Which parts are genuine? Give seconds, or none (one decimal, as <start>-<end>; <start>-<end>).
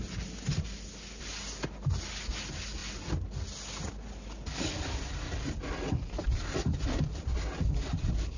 0.0-8.4